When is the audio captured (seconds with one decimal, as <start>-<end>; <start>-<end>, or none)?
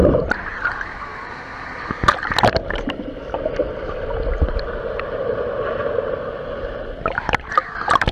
0.0-8.1